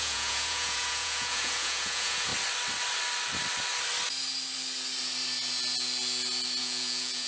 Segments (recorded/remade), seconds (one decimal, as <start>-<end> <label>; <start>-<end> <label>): 0.0-2.3 remade; 2.3-6.6 recorded; 6.6-7.3 remade